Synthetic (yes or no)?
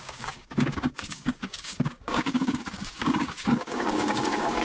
yes